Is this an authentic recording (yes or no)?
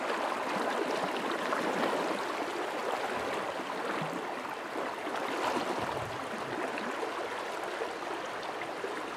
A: yes